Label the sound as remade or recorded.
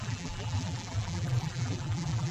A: remade